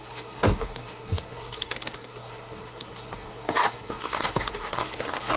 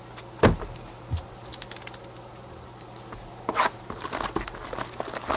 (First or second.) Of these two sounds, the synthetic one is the first